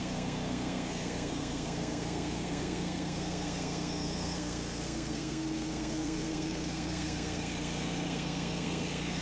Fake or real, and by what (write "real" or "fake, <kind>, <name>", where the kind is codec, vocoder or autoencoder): fake, codec, SNAC